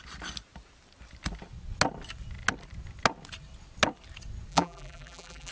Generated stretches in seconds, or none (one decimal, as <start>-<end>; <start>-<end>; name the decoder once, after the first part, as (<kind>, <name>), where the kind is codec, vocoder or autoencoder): 4.5-5.5 (vocoder, BigVGAN v2)